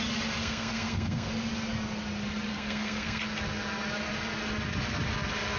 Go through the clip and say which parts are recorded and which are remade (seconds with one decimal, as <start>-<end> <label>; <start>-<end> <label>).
0.0-0.4 recorded; 0.4-1.3 remade; 1.3-2.5 recorded; 2.5-3.2 remade; 3.2-5.6 recorded